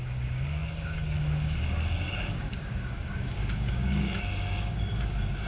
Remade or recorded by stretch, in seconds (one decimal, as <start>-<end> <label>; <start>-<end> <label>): 0.0-5.5 remade